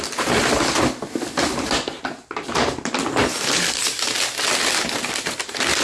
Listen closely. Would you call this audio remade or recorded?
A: remade